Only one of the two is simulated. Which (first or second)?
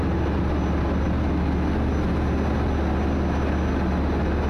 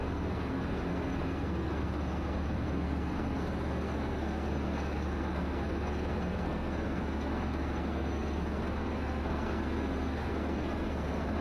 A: second